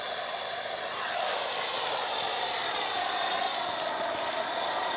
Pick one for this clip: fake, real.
real